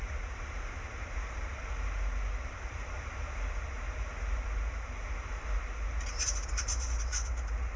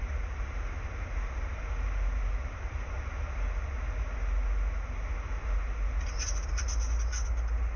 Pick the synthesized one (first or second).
first